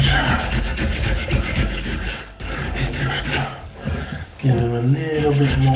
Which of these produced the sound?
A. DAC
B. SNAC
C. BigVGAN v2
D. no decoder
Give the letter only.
A